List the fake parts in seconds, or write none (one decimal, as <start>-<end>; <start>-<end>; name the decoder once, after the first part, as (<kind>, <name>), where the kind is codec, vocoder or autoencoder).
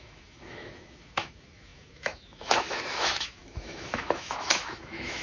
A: 0.0-5.2 (autoencoder, DAC-VAE)